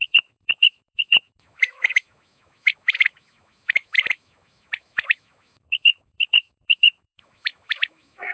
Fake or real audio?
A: fake